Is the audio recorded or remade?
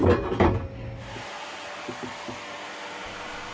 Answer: recorded